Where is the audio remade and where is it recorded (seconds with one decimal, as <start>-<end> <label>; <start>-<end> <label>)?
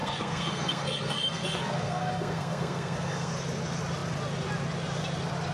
0.0-3.3 remade; 3.3-5.5 recorded